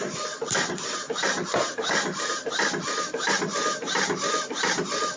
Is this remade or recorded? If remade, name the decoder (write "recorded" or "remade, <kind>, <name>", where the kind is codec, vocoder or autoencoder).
remade, vocoder, BigVGAN v2